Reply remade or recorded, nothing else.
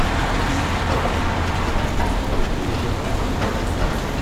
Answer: recorded